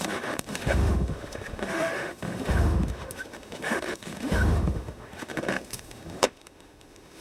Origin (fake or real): fake